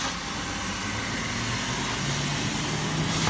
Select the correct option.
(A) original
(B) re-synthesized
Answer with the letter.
A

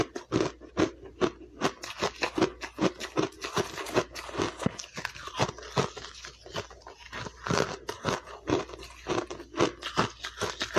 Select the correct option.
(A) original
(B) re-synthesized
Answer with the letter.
A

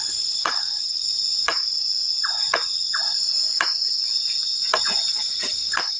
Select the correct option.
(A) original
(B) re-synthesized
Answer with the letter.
B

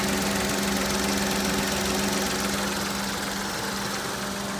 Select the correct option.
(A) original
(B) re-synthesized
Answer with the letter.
A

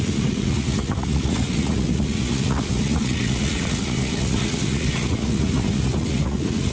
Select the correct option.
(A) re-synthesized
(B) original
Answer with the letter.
A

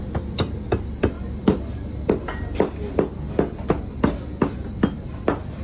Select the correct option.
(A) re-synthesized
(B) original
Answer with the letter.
B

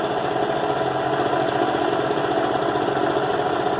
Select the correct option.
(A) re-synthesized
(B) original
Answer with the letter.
B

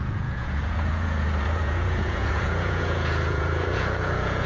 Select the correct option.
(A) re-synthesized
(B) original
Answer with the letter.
A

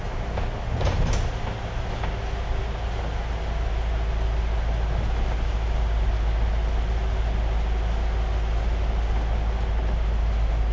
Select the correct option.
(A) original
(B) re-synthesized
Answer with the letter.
A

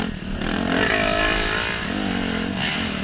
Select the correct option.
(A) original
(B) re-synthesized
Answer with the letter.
A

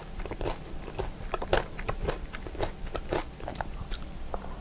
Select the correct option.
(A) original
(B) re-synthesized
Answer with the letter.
A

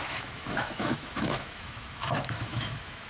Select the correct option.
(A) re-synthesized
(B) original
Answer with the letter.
A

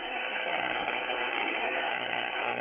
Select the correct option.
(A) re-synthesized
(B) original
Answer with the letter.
A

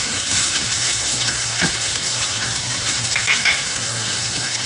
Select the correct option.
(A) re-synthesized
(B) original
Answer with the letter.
A